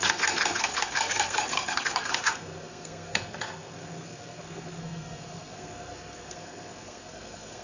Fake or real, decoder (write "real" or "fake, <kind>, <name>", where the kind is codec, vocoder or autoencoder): fake, codec, SNAC